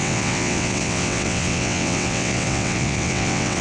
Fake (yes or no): yes